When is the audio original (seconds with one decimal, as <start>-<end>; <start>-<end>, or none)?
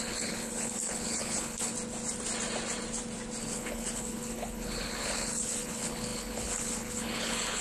1.7-3.4